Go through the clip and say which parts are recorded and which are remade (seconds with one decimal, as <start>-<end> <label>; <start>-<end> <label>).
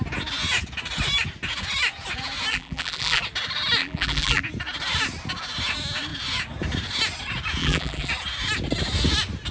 0.0-2.5 recorded; 2.5-3.2 remade; 3.2-3.8 recorded; 3.8-4.4 remade; 4.4-7.6 recorded; 7.6-8.1 remade; 8.1-9.5 recorded